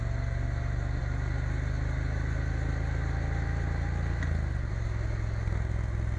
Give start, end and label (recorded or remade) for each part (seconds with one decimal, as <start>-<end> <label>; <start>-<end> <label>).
0.0-6.2 recorded